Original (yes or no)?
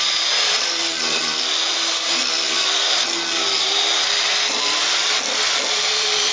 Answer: no